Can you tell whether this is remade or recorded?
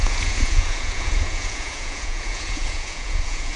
remade